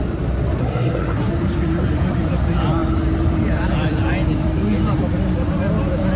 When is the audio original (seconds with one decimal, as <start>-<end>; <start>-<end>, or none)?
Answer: 0.0-0.6; 1.3-6.2